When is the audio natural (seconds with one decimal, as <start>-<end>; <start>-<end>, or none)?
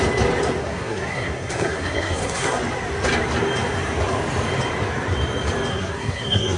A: 0.0-0.6; 2.6-5.7